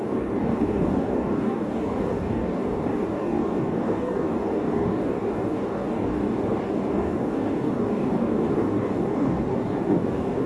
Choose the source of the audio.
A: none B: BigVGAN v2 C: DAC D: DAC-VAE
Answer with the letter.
C